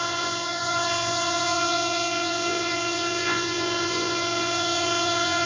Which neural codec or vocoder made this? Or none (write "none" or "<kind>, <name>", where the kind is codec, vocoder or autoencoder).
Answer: vocoder, Vocos